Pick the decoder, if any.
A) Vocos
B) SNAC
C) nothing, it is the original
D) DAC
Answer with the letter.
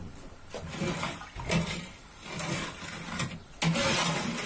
C